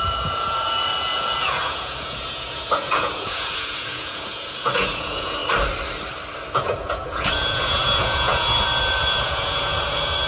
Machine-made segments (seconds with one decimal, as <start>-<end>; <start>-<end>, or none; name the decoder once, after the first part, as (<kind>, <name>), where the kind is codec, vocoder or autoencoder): 0.0-5.4 (vocoder, Vocos); 6.5-10.3